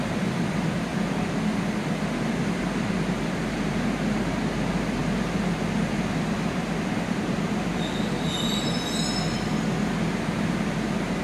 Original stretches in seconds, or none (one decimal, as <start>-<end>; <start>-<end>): 0.0-11.2